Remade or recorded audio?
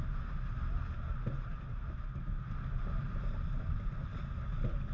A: recorded